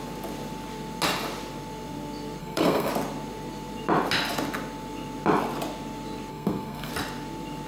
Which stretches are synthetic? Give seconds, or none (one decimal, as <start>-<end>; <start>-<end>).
2.4-2.9; 6.3-6.9